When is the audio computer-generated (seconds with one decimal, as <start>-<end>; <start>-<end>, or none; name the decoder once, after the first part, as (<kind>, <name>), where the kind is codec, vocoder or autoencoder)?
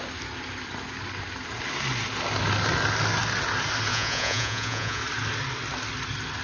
3.9-5.0 (vocoder, Vocos)